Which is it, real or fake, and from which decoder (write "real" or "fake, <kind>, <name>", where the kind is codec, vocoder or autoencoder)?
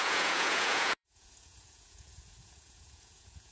fake, vocoder, Vocos